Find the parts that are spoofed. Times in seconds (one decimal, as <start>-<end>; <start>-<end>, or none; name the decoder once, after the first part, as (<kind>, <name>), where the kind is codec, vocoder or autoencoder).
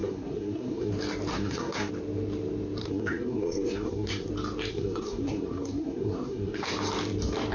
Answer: 0.0-0.9 (codec, SNAC); 1.3-1.9; 2.8-4.3; 4.7-6.7